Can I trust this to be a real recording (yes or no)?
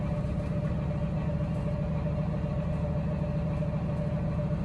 yes